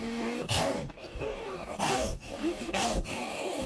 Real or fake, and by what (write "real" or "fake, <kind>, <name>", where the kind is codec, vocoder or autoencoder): fake, codec, DAC